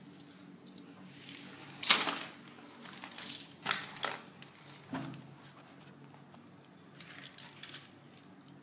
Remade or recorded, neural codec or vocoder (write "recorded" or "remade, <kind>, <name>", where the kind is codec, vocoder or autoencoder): recorded